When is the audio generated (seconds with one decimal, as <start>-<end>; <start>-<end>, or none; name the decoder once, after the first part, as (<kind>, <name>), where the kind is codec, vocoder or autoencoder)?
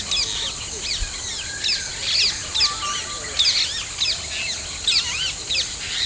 none